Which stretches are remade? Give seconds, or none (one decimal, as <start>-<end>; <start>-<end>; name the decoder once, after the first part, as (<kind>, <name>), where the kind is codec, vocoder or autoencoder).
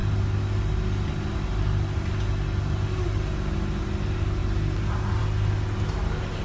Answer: none